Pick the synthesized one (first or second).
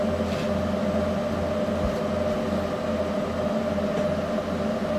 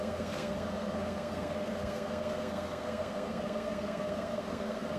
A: second